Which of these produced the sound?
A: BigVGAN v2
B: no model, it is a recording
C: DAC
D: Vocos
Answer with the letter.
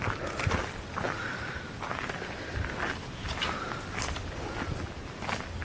B